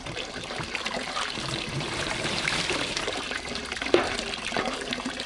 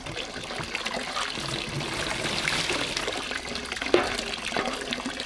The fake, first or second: first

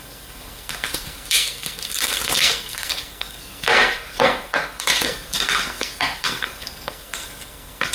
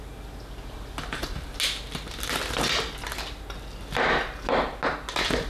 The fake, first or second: first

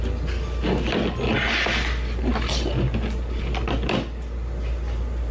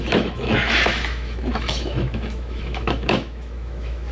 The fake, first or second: second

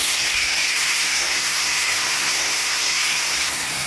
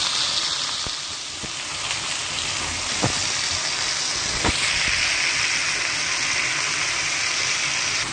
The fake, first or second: first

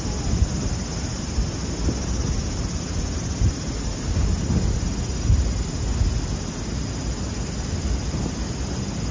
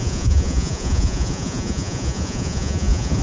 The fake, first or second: second